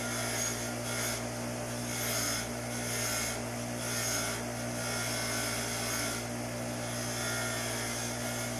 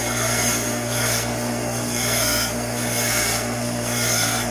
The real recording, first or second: first